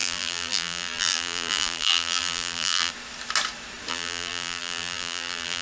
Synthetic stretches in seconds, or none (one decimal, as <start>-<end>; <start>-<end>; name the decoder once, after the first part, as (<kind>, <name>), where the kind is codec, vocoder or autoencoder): 0.0-2.9 (vocoder, BigVGAN v2); 3.9-5.6